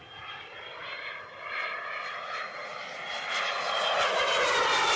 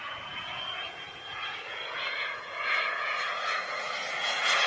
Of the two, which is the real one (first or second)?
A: first